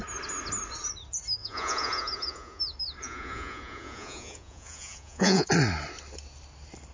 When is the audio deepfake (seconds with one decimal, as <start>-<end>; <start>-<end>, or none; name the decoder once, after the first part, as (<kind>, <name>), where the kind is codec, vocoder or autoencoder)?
1.4-2.6 (vocoder, Vocos); 3.0-5.5